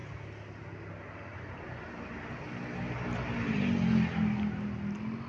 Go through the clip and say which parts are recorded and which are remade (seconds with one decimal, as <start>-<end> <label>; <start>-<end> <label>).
0.0-5.3 recorded